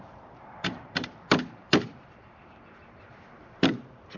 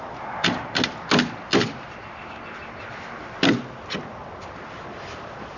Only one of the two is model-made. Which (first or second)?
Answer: first